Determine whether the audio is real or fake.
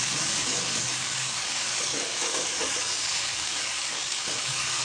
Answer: fake